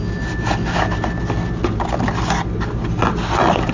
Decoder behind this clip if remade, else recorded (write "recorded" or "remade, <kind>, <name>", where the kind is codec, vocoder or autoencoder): recorded